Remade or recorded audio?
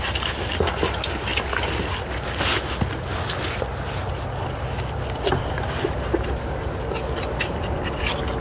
recorded